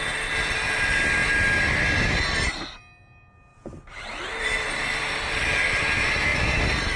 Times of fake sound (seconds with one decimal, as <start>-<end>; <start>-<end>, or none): 3.5-5.8; 6.3-7.0